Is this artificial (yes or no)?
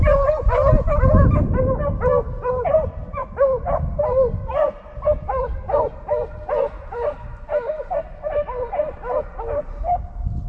no